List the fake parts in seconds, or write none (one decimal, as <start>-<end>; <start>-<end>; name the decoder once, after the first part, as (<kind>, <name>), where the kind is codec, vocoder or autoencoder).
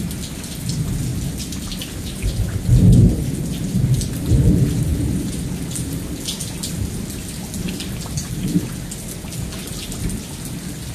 1.1-2.1 (vocoder, BigVGAN v2)